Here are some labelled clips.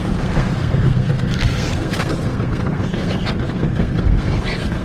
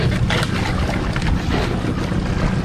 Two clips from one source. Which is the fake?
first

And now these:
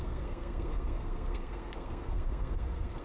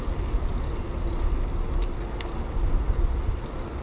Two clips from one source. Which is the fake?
first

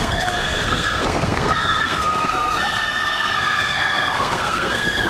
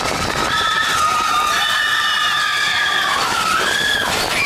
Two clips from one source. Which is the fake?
first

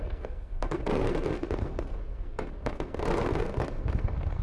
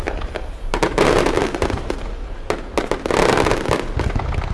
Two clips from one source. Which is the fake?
first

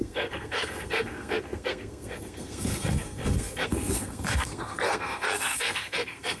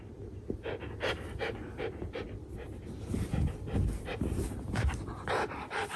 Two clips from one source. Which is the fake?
first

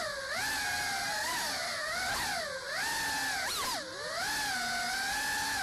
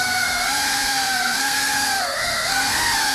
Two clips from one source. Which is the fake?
second